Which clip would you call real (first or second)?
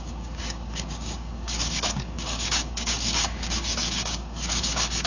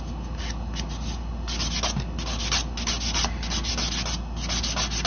second